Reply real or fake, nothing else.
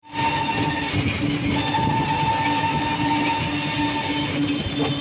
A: real